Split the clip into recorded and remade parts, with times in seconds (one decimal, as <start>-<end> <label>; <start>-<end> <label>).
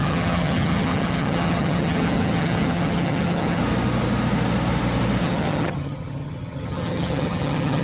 0.0-3.6 remade; 3.6-5.2 recorded; 5.2-7.8 remade